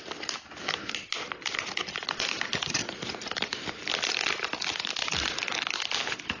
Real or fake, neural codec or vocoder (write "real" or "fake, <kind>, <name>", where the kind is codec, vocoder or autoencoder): real